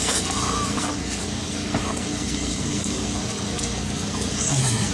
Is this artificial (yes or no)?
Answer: yes